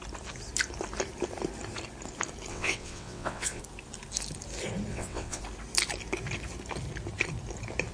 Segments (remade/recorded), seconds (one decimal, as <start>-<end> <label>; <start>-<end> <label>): 0.0-2.5 recorded; 2.5-3.6 remade; 3.6-4.9 recorded; 4.9-5.4 remade; 5.4-7.9 recorded